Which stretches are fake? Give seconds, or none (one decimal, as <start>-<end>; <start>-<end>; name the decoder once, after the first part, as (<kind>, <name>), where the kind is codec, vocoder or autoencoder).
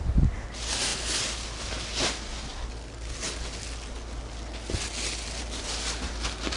none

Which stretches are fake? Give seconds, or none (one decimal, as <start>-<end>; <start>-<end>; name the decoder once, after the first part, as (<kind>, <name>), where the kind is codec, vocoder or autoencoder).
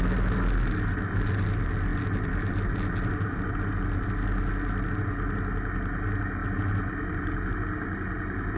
none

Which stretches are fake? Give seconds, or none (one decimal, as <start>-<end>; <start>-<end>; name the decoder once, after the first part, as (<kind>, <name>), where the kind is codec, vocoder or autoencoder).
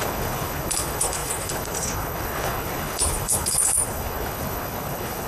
0.0-5.3 (codec, HILCodec)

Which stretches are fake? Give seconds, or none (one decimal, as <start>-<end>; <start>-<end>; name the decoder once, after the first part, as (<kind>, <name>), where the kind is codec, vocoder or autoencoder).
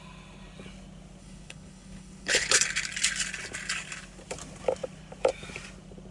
1.2-2.6 (codec, HILCodec)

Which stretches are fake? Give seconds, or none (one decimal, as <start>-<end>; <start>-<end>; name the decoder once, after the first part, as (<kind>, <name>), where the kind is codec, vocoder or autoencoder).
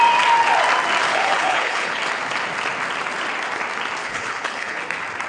1.1-2.0 (codec, HILCodec); 4.0-4.8